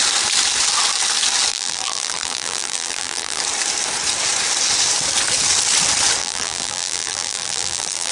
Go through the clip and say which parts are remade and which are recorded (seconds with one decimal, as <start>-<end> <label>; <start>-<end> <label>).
0.0-1.5 recorded; 1.5-3.4 remade; 3.4-6.2 recorded; 6.2-8.1 remade